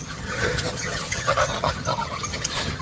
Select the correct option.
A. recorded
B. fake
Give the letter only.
B